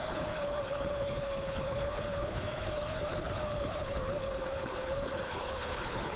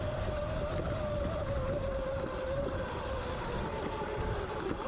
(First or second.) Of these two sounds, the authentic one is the second